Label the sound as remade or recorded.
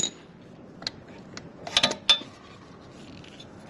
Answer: recorded